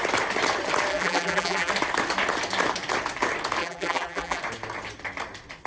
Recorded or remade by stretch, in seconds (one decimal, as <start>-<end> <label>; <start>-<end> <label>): 0.0-0.9 recorded; 0.9-1.7 remade; 1.7-3.6 recorded; 3.6-4.4 remade; 4.4-5.7 recorded